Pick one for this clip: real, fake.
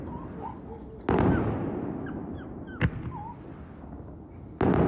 real